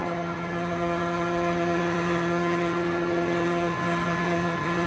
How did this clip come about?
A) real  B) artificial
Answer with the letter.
B